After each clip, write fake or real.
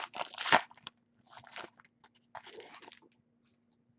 real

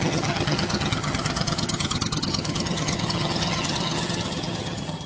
fake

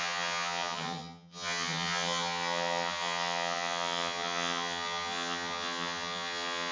fake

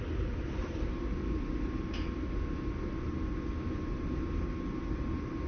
real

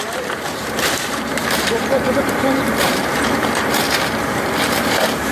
fake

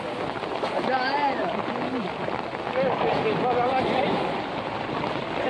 real